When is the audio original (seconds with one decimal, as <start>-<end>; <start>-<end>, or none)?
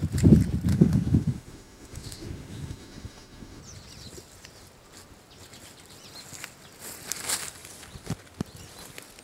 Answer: 0.0-0.7; 3.6-9.2